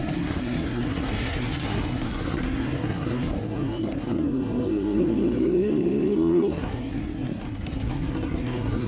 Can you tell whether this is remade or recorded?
remade